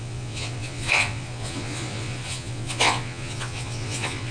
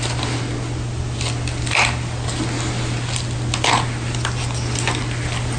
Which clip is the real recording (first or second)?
second